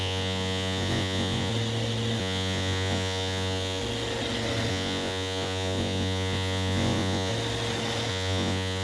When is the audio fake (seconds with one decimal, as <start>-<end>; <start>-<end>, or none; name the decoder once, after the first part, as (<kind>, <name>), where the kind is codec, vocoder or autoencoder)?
0.0-1.5 (vocoder, Vocos); 2.2-3.8; 4.7-7.3; 8.1-8.8